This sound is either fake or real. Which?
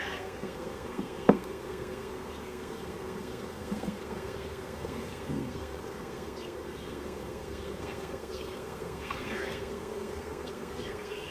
fake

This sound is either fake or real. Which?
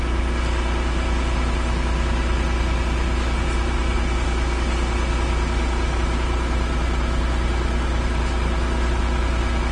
real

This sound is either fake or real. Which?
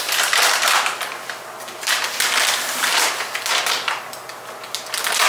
real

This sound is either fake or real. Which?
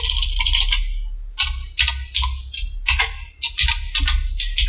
real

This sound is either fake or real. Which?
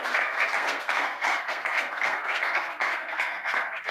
fake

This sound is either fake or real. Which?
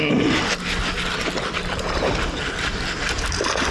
real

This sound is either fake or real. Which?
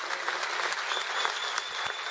real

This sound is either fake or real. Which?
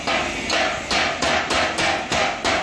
real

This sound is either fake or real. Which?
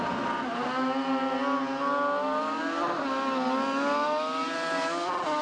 real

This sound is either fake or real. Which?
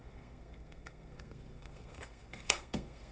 fake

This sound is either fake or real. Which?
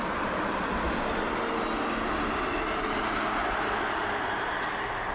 real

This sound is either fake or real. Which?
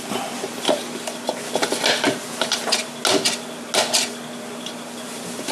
real